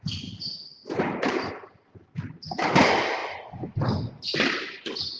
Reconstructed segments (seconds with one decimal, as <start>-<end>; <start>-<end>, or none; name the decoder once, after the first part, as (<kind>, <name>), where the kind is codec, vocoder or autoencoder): 0.8-1.5 (vocoder, BigVGAN v2)